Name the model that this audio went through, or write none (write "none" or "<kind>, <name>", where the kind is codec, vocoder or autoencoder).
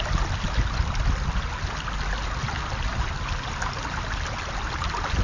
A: none